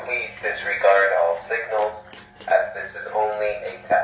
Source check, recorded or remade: recorded